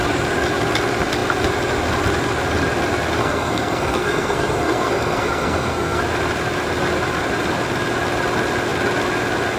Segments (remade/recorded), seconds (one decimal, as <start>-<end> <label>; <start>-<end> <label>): 0.0-3.2 recorded; 3.2-6.0 remade; 6.0-9.6 recorded